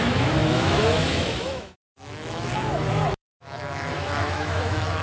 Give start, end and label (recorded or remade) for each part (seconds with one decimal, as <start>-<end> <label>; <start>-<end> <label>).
0.0-5.0 remade

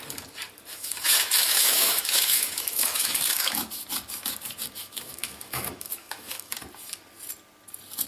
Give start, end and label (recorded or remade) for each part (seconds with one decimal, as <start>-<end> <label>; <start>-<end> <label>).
0.0-0.7 recorded; 0.7-3.7 remade; 3.7-4.8 recorded; 4.8-6.5 remade; 6.5-8.1 recorded